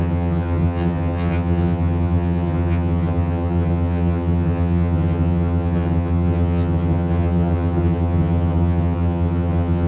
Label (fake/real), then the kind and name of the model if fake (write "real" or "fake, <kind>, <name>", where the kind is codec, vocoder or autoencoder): fake, vocoder, HiFi-GAN